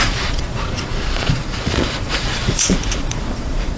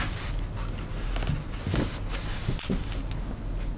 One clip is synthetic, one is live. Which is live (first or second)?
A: second